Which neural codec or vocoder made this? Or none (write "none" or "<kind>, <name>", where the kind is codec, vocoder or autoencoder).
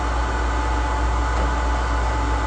none